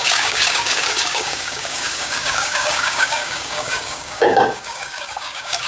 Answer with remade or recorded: remade